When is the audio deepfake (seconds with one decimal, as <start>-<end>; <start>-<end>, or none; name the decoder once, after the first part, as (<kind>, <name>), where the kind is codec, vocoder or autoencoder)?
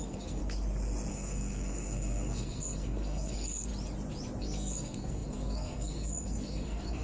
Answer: 0.0-0.4 (codec, SNAC); 1.1-3.7; 4.4-7.0